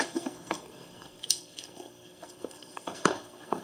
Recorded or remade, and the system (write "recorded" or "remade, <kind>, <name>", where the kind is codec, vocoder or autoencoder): remade, codec, SNAC